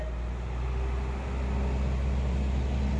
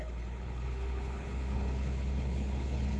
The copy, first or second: second